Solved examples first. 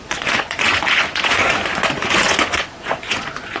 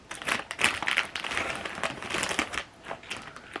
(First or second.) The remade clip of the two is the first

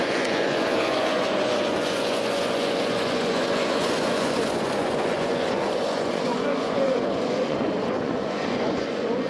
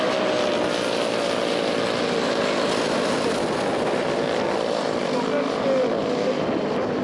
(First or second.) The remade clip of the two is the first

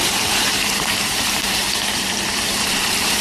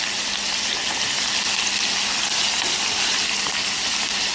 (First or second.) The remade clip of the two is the first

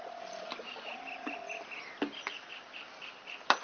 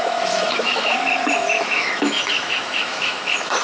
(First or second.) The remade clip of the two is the second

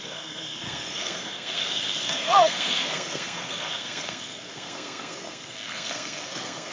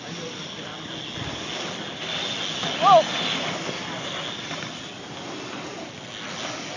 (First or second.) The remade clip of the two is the first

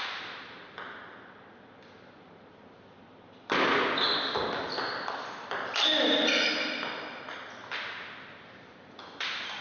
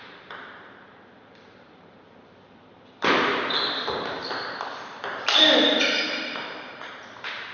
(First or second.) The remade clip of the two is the second